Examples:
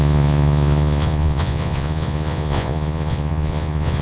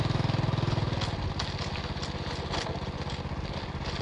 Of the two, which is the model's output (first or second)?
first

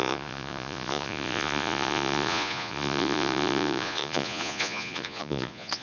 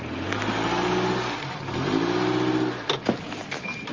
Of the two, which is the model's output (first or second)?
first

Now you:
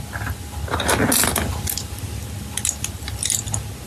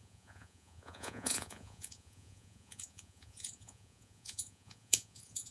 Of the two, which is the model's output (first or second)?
second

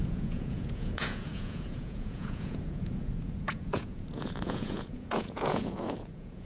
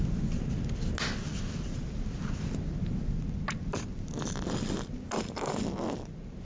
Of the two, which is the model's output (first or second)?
first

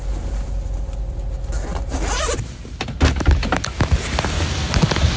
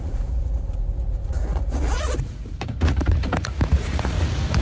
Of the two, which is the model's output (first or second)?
second